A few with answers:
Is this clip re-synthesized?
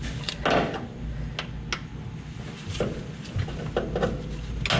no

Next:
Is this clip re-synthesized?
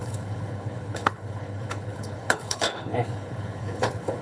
yes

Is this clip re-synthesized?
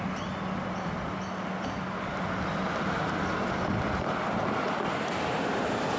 no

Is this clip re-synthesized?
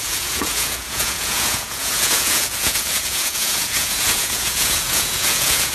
yes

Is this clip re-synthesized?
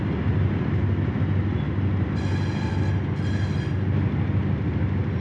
no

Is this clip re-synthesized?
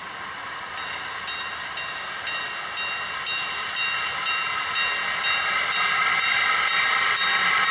no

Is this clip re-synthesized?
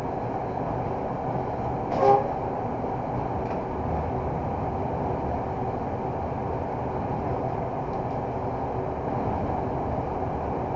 no